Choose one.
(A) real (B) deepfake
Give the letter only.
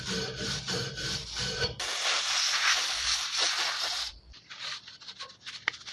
B